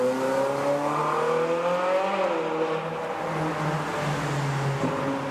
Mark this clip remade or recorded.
recorded